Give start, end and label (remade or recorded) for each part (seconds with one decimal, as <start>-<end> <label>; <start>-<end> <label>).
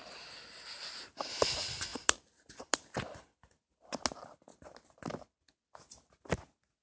0.0-1.9 recorded; 1.9-3.5 remade; 3.5-4.5 recorded; 4.5-5.4 remade; 5.4-6.8 recorded